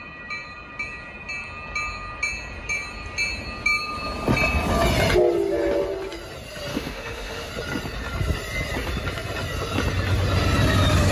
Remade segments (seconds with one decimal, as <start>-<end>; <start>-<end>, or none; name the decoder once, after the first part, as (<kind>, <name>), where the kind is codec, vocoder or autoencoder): 6.7-7.5 (autoencoder, DAC-VAE)